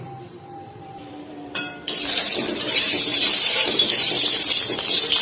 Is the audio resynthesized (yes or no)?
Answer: yes